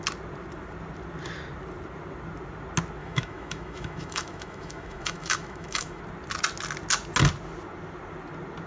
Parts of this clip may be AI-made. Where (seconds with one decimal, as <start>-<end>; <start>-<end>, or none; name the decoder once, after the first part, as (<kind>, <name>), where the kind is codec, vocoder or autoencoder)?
3.0-6.0 (autoencoder, DAC-VAE)